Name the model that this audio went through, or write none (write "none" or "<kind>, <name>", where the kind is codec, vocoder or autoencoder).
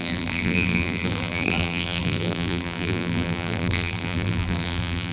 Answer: vocoder, BigVGAN v2